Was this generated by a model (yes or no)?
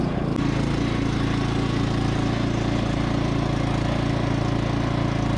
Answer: no